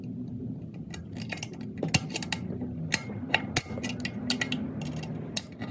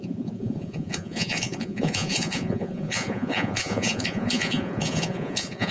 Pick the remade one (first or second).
second